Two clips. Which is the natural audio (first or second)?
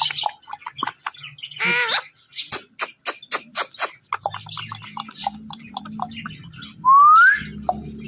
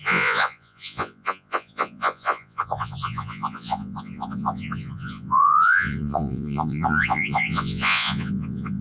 first